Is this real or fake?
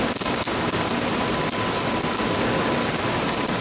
real